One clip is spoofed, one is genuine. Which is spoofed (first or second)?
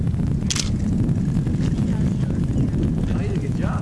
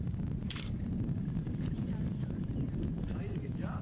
second